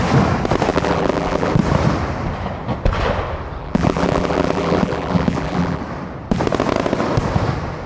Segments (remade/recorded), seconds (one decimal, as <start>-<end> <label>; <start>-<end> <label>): 0.0-0.7 recorded; 0.7-1.5 remade; 1.5-3.6 recorded; 3.6-5.8 remade; 5.8-7.9 recorded